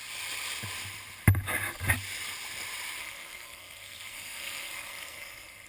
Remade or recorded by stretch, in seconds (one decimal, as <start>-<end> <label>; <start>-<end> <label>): 0.0-3.0 recorded; 3.0-5.7 remade